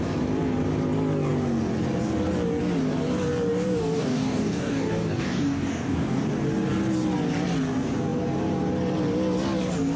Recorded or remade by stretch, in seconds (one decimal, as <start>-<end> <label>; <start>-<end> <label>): 0.0-3.5 recorded; 3.5-6.2 remade; 6.2-10.0 recorded